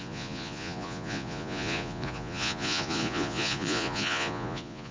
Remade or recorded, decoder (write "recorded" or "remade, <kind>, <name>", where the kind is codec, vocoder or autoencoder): remade, vocoder, Vocos